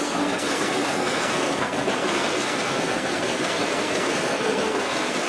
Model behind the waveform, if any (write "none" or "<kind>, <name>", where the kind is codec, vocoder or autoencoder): codec, SNAC